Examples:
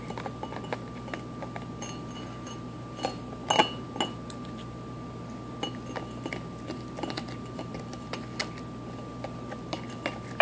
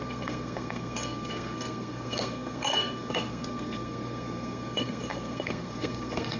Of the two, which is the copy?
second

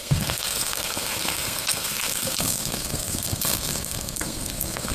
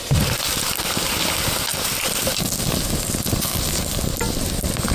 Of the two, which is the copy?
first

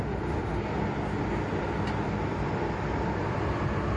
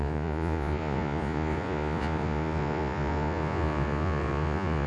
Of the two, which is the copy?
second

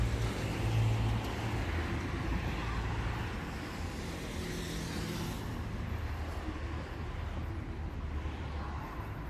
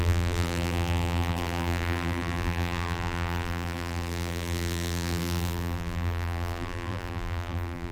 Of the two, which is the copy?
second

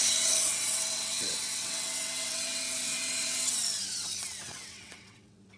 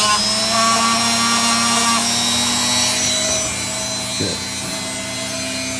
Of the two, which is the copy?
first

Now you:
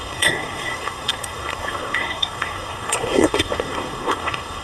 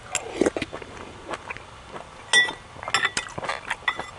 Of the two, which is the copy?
first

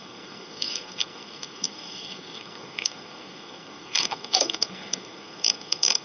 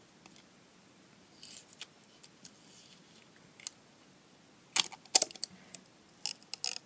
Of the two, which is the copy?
first